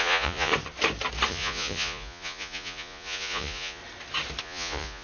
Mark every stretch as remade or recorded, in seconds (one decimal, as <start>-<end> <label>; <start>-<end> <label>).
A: 0.0-0.5 remade; 0.5-1.3 recorded; 1.3-3.8 remade; 3.8-4.4 recorded; 4.4-5.0 remade